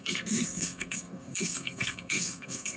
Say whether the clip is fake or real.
fake